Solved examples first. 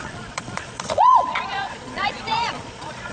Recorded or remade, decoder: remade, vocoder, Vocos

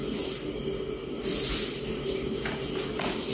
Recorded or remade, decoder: recorded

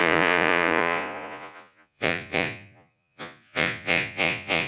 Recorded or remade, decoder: remade, vocoder, Vocos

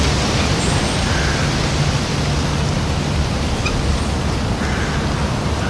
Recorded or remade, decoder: recorded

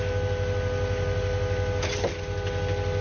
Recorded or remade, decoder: recorded